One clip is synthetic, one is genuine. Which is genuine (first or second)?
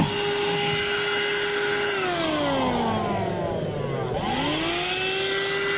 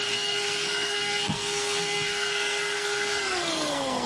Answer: first